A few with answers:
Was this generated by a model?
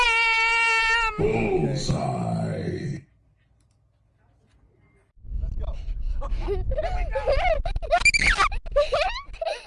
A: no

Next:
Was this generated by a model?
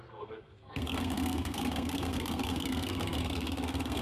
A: yes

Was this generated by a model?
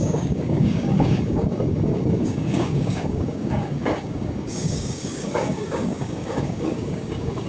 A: yes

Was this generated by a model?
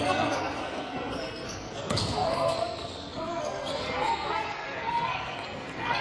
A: yes